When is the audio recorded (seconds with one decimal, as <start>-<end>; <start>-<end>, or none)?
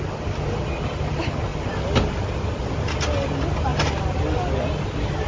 0.0-5.3